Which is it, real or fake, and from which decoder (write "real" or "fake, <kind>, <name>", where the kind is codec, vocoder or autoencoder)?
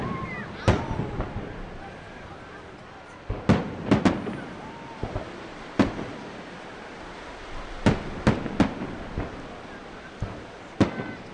real